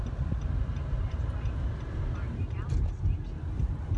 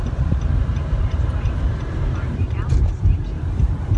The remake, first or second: second